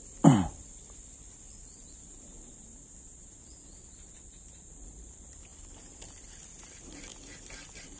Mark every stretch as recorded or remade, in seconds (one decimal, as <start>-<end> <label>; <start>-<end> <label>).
0.0-8.0 recorded